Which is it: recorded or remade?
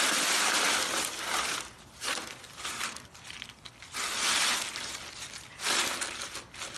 remade